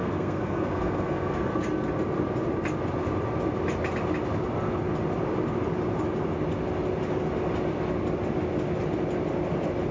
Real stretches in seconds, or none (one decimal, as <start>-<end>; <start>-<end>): 1.5-9.9